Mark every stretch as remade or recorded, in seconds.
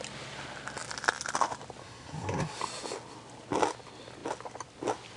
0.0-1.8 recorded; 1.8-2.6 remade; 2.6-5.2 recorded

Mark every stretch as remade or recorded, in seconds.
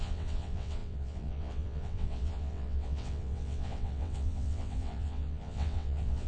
0.0-6.3 remade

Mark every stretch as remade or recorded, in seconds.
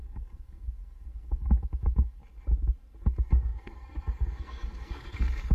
0.0-2.2 remade; 2.2-3.0 recorded; 3.0-5.5 remade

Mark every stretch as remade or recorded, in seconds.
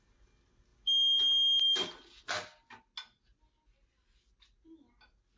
0.0-5.4 recorded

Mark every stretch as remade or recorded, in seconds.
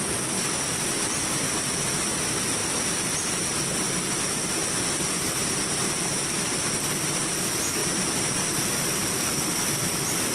0.0-7.8 recorded; 7.8-9.4 remade; 9.4-10.3 recorded